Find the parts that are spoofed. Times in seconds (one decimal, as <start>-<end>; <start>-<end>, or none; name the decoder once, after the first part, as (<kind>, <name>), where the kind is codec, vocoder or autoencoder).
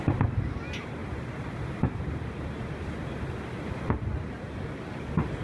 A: none